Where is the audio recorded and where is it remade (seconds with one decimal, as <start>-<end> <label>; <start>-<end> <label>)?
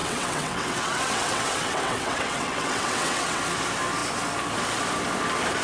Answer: 0.0-3.4 remade; 3.4-5.6 recorded